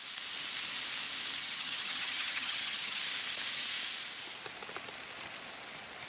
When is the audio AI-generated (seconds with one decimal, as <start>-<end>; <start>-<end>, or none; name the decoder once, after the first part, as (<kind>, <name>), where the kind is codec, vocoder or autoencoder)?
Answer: 1.4-3.0 (vocoder, HiFi-GAN)